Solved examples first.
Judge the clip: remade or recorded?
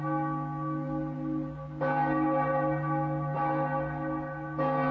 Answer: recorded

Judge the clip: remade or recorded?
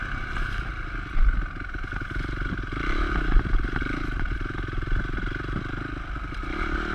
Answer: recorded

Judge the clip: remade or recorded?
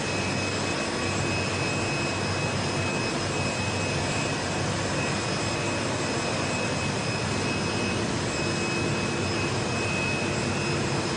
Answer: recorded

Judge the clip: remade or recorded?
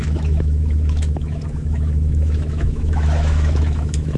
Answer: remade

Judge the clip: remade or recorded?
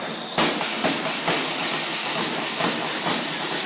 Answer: recorded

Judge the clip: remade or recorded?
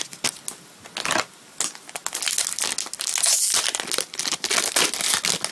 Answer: recorded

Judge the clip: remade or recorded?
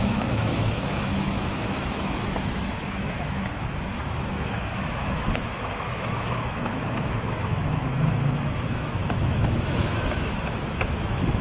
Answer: remade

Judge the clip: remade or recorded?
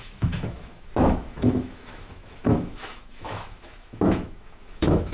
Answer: remade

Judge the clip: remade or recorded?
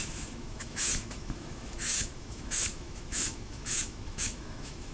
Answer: remade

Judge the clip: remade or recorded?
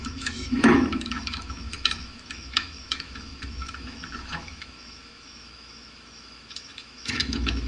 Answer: remade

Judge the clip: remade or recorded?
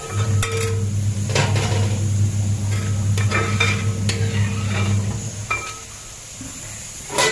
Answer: recorded